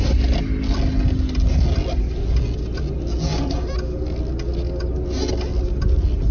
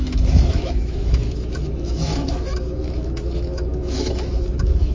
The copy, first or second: second